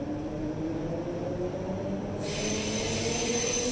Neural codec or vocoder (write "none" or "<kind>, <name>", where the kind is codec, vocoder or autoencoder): none